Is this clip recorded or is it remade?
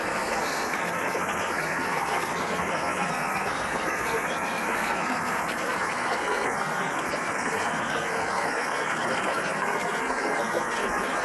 remade